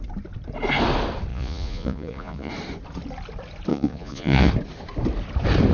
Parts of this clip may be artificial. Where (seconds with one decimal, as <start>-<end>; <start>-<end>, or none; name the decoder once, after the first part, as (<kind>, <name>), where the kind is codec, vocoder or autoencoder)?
1.3-2.5 (vocoder, Vocos); 3.7-4.5